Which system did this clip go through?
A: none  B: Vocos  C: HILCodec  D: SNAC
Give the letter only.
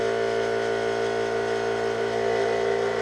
A